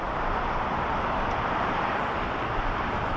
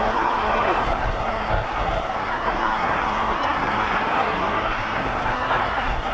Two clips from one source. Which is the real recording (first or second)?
first